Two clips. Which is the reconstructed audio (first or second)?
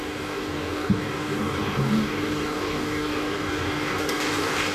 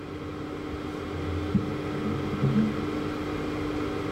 first